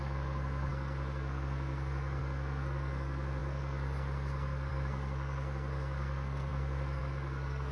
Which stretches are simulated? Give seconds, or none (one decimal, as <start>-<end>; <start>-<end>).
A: 0.0-7.7